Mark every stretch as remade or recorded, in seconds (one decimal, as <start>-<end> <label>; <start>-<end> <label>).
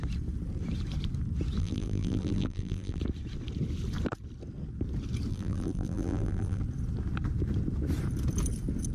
0.0-1.6 recorded; 1.6-3.0 remade; 3.0-5.3 recorded; 5.3-6.6 remade; 6.6-8.9 recorded